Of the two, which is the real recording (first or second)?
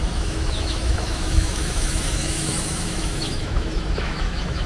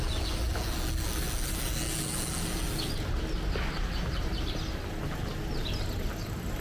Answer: second